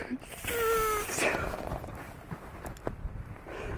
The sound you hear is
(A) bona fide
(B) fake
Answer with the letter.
A